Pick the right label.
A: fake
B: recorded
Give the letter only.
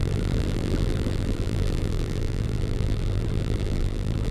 A